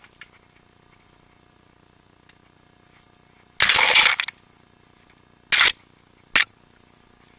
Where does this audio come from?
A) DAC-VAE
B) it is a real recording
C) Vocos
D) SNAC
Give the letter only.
B